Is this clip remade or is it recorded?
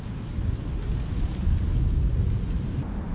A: recorded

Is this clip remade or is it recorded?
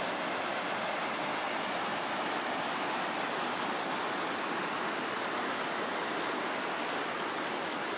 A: recorded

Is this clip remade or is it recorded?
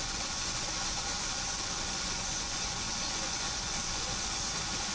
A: remade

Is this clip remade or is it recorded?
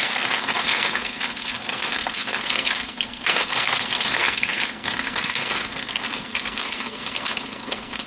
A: remade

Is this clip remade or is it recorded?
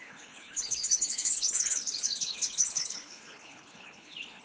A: remade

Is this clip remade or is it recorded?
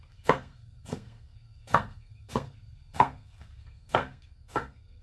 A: remade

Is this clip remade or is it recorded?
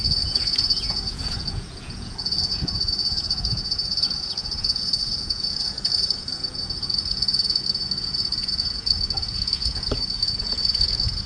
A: remade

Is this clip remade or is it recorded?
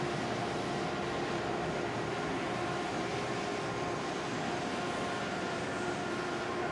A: remade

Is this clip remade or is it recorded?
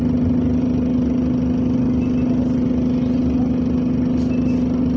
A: recorded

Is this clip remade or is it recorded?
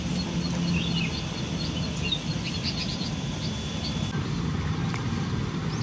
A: recorded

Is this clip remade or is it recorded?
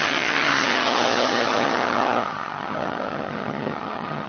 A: remade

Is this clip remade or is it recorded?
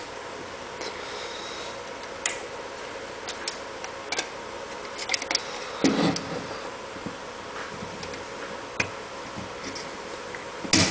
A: recorded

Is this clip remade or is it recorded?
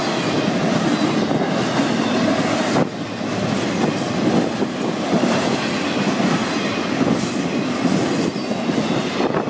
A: recorded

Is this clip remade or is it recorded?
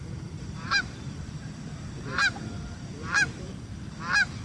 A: remade